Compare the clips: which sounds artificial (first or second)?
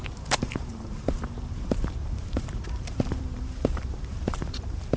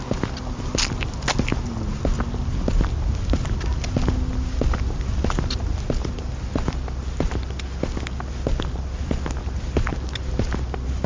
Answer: first